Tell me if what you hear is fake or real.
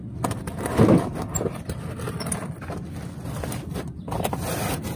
real